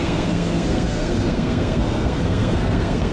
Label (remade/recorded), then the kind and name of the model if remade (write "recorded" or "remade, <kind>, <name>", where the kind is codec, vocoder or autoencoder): remade, codec, SNAC